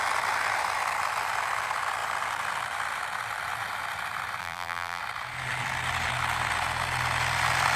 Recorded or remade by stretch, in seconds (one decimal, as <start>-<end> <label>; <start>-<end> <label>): 0.0-4.4 recorded; 4.4-5.0 remade; 5.0-7.8 recorded

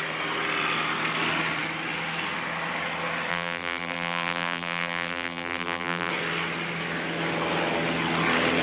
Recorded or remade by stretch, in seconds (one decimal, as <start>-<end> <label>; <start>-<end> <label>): 0.0-3.3 recorded; 3.3-6.1 remade; 6.1-8.6 recorded

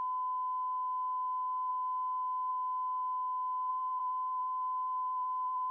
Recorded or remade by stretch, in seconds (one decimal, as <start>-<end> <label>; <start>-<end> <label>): 0.0-3.7 recorded; 3.7-5.7 remade

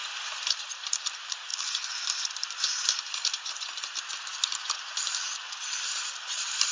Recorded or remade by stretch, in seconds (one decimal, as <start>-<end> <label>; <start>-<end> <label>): 0.0-0.5 recorded; 0.5-6.7 remade

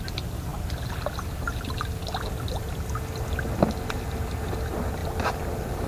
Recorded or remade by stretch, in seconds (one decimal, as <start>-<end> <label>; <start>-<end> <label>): 0.0-5.0 recorded; 5.0-5.9 remade

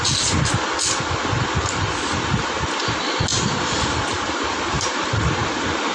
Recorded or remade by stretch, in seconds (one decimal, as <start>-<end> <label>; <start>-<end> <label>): 0.0-3.3 recorded; 3.3-5.2 remade; 5.2-5.9 recorded

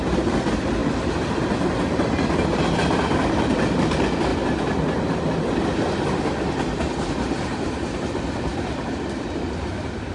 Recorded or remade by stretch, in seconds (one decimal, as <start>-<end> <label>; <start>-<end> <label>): 0.0-10.1 recorded